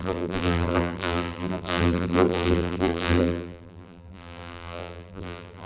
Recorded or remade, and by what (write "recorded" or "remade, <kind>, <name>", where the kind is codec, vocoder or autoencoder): remade, vocoder, BigVGAN v2